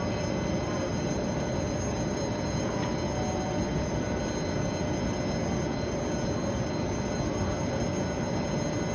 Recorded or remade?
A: recorded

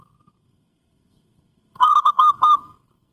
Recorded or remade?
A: remade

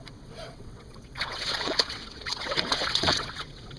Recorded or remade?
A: remade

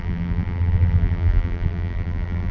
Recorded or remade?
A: remade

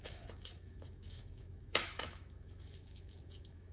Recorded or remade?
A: remade